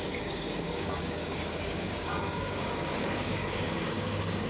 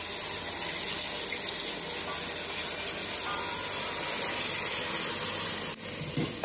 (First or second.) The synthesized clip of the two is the first